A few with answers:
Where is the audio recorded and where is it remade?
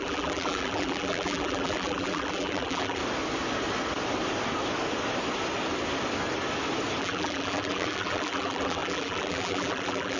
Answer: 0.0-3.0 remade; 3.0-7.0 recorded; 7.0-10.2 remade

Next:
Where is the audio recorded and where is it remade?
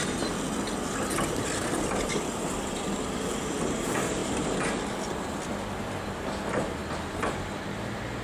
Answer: 0.0-8.2 recorded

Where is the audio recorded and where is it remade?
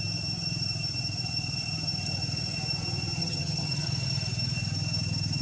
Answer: 0.0-3.2 recorded; 3.2-3.9 remade; 3.9-5.4 recorded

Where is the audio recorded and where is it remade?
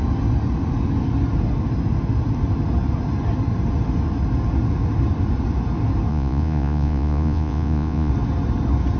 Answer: 0.0-6.1 recorded; 6.1-8.1 remade; 8.1-9.0 recorded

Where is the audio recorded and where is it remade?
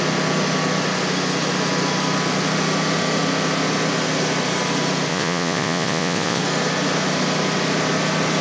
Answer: 0.0-5.1 recorded; 5.1-6.4 remade; 6.4-8.4 recorded